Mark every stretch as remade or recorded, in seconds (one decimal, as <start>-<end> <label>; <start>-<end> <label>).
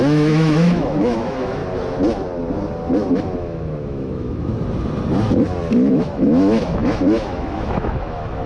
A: 0.0-1.6 remade; 1.6-3.1 recorded; 3.1-4.5 remade; 4.5-5.9 recorded; 5.9-8.5 remade